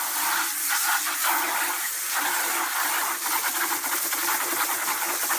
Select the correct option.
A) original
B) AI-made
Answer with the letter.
A